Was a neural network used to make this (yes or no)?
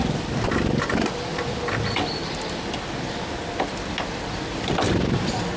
no